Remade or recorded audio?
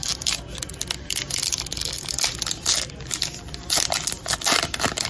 recorded